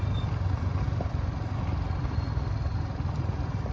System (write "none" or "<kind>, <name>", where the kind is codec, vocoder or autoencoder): none